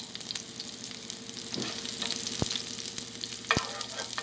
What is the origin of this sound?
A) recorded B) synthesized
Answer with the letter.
A